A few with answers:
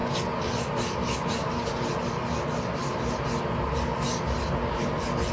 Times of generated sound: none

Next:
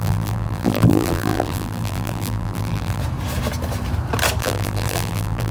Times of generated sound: 0.0-3.0; 4.4-5.5

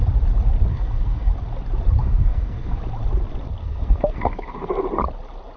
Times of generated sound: 0.7-1.3; 2.0-2.8; 3.6-4.7

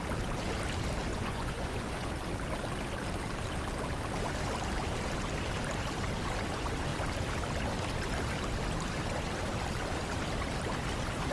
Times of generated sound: 1.1-2.1

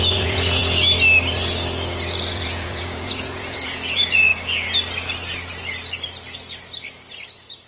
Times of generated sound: 0.0-0.6; 2.3-4.3; 7.3-7.7

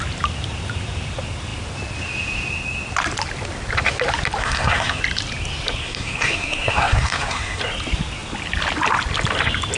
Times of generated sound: 4.4-5.0; 5.8-7.6